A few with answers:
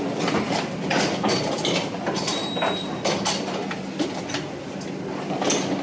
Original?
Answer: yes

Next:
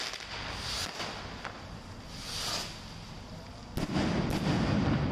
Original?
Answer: yes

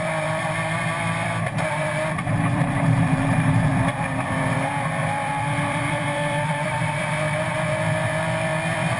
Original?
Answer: no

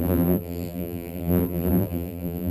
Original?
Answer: no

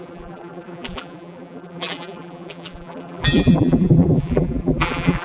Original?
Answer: no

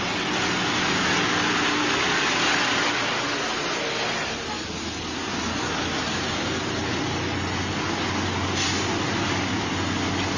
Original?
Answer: yes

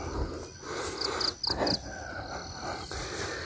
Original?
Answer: yes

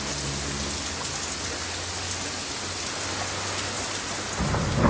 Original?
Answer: yes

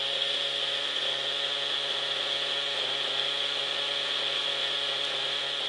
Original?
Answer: yes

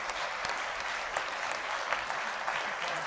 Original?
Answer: no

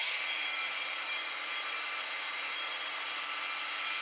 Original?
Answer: no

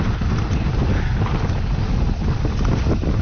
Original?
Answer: yes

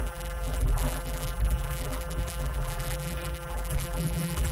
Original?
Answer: no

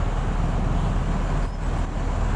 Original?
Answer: yes